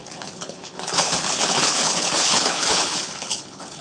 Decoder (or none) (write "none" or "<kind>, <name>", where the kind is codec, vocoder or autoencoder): codec, HILCodec